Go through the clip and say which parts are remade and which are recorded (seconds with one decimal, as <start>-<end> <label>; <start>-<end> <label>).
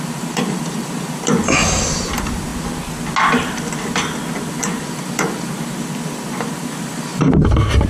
0.0-2.5 remade; 2.5-4.5 recorded; 4.5-7.1 remade; 7.1-7.9 recorded